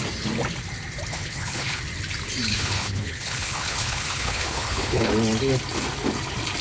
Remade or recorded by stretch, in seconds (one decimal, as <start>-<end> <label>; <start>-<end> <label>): 0.0-1.1 recorded; 1.1-1.8 remade; 1.8-2.5 recorded; 2.5-5.1 remade; 5.1-6.6 recorded

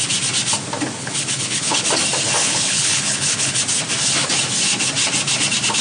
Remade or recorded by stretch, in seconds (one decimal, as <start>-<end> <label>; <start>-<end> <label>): 0.0-1.0 recorded; 1.0-1.8 remade; 1.8-2.4 recorded; 2.4-3.6 remade; 3.6-5.8 recorded

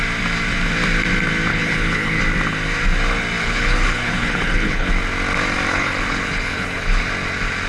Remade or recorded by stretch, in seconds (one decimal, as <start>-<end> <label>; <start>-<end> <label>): 0.0-1.5 recorded; 1.5-2.2 remade; 2.2-3.4 recorded; 3.4-4.9 remade; 4.9-5.7 recorded; 5.7-7.1 remade; 7.1-7.7 recorded

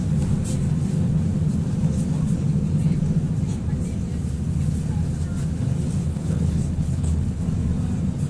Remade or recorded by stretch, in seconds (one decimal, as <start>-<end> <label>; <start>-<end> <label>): 0.0-6.0 recorded; 6.0-7.4 remade; 7.4-8.3 recorded

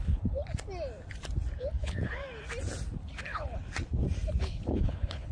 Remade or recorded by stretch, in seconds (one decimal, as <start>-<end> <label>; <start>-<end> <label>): 0.0-0.4 remade; 0.4-1.6 recorded; 1.6-2.2 remade; 2.2-3.2 recorded; 3.2-3.6 remade; 3.6-4.4 recorded; 4.4-5.3 remade